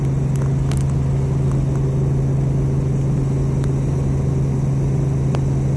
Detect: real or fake real